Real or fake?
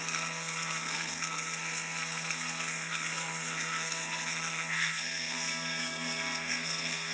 fake